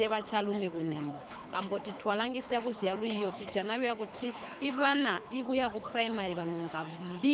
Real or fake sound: fake